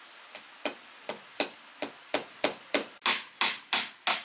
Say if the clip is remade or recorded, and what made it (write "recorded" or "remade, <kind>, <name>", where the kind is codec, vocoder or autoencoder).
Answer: recorded